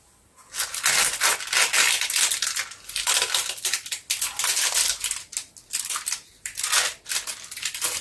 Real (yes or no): yes